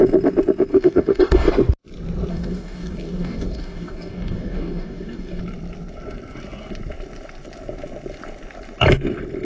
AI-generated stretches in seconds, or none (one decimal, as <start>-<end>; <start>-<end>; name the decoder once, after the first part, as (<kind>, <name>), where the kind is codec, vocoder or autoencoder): 0.7-1.5 (codec, DAC); 2.3-5.4